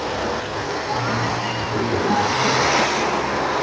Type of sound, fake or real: real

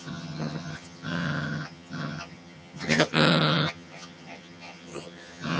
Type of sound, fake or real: fake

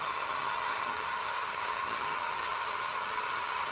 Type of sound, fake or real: fake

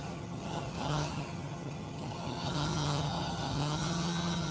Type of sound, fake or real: fake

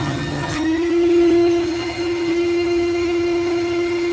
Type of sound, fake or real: fake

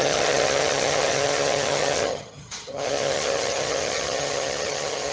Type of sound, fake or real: fake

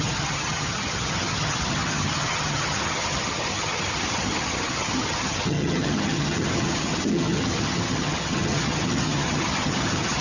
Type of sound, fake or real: fake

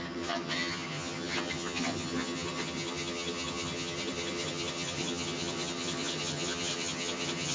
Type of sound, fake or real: fake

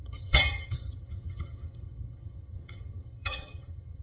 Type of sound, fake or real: fake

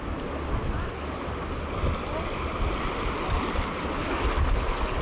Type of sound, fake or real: real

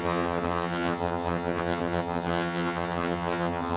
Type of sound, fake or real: fake